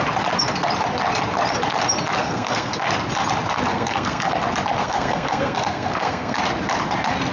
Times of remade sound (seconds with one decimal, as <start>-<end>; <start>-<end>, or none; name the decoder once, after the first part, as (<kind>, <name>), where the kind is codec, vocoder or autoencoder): 2.2-2.8 (codec, SNAC); 3.7-4.3; 4.8-6.4